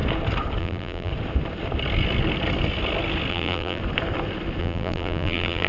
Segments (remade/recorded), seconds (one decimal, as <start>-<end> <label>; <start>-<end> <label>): 0.0-0.6 recorded; 0.6-1.1 remade; 1.1-3.3 recorded; 3.3-3.8 remade; 3.8-4.6 recorded; 4.6-5.7 remade